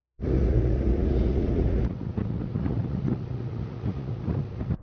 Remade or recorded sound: remade